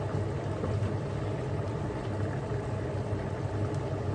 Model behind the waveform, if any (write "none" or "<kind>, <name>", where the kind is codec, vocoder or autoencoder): vocoder, BigVGAN v2